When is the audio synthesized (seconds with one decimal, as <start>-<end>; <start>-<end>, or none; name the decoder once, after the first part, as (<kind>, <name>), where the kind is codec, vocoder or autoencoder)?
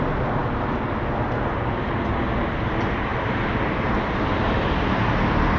none